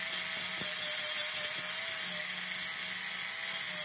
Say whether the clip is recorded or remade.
recorded